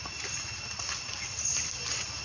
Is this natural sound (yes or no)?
yes